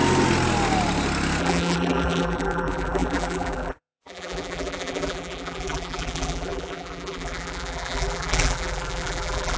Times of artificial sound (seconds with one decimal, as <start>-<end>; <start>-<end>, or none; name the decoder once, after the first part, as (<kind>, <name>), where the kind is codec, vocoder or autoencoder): 1.4-9.6 (vocoder, BigVGAN v2)